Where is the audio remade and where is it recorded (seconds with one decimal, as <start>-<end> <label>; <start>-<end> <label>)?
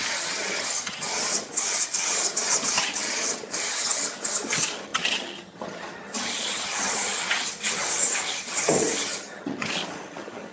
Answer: 0.0-10.5 remade